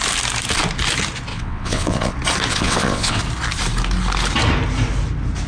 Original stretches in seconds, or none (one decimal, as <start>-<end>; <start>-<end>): 0.0-1.3; 2.1-2.5; 3.2-5.5